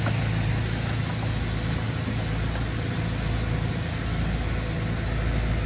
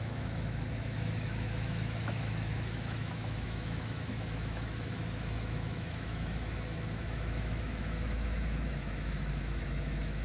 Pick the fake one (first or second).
second